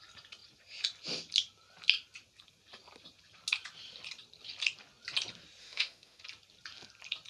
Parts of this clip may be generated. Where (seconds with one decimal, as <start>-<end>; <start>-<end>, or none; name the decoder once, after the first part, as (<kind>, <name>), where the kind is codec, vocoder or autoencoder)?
5.6-6.2 (autoencoder, DAC-VAE)